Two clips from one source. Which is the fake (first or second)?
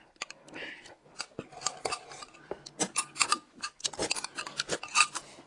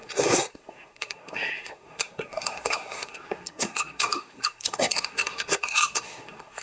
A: second